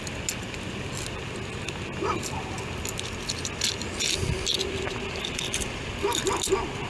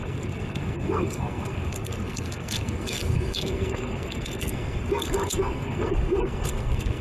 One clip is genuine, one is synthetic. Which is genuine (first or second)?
first